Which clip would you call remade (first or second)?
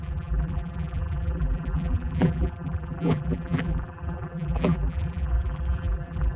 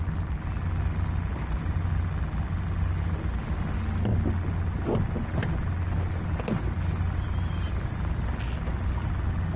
first